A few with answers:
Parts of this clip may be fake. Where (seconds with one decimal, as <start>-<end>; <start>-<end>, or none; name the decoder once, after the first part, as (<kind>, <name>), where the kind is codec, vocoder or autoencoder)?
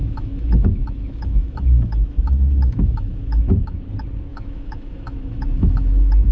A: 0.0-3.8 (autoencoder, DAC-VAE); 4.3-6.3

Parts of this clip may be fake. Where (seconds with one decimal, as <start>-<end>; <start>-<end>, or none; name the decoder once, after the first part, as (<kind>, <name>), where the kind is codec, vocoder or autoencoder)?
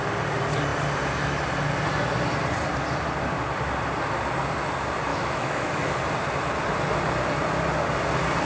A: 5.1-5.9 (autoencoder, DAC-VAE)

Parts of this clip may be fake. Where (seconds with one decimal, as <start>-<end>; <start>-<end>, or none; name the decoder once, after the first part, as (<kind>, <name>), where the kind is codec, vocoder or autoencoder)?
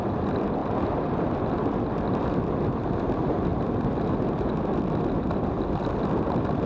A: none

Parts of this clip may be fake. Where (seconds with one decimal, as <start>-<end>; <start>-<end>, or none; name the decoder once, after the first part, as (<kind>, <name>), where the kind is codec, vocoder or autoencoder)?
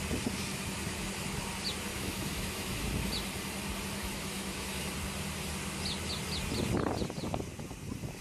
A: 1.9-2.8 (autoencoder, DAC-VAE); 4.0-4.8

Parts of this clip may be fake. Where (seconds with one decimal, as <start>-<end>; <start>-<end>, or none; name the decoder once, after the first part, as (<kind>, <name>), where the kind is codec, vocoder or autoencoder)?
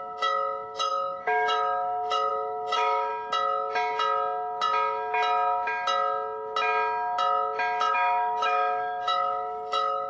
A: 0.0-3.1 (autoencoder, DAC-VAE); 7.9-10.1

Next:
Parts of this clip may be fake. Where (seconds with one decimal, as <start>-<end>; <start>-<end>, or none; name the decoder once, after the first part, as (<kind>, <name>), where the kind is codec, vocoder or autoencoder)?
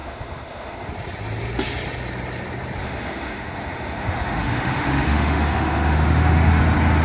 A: 0.0-0.9 (autoencoder, DAC-VAE); 2.8-6.6